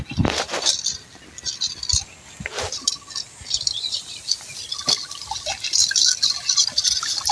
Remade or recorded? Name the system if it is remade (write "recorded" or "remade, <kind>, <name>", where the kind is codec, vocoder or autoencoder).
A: recorded